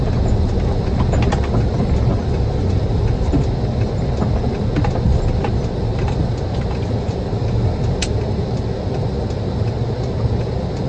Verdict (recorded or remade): recorded